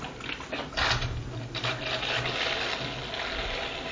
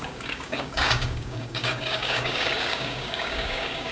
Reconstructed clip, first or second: second